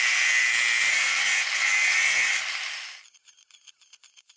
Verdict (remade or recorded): remade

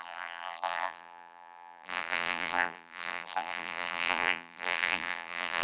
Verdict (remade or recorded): remade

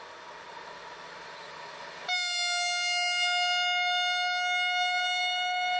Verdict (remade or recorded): recorded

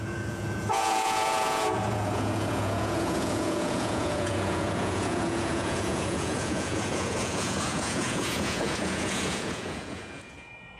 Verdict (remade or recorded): remade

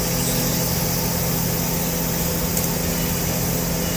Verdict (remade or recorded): recorded